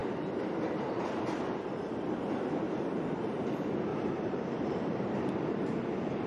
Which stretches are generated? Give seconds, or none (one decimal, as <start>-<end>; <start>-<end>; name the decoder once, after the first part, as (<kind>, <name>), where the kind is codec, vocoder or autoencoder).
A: 3.9-5.1 (vocoder, BigVGAN v2)